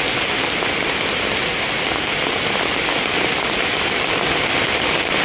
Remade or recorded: recorded